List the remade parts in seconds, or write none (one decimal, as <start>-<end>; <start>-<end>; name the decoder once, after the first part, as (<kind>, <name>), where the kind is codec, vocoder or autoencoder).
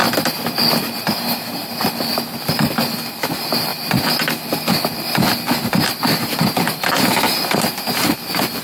none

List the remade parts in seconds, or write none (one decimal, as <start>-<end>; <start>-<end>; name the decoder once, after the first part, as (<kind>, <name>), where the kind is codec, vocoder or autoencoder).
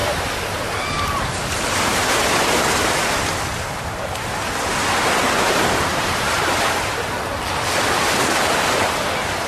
0.0-3.2 (vocoder, BigVGAN v2); 5.9-7.1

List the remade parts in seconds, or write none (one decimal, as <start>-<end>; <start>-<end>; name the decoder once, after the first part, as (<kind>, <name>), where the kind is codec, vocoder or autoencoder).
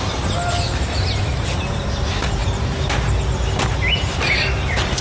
1.3-1.8 (vocoder, BigVGAN v2); 2.4-5.0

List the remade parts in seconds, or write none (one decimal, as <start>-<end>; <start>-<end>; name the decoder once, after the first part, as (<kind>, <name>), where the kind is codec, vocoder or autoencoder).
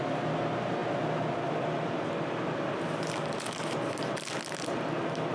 none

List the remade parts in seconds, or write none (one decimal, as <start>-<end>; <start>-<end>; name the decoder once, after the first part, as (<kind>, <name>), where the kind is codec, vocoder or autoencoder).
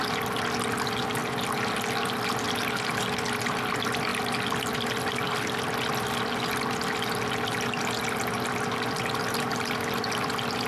none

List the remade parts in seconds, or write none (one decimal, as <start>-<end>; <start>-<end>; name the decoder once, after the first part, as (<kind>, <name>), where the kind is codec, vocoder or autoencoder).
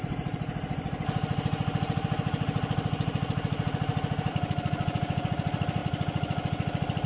0.0-3.9 (vocoder, BigVGAN v2); 5.3-5.8